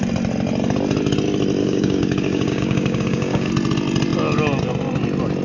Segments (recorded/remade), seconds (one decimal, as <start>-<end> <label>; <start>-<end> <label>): 0.0-1.6 recorded; 1.6-3.5 remade; 3.5-5.4 recorded